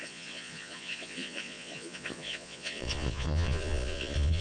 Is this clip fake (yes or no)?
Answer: yes